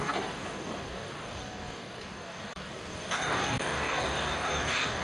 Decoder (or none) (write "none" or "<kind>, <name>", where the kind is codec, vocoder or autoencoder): codec, DAC